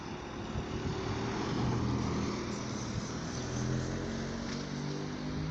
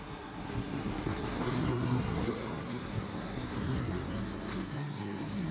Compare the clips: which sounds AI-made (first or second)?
second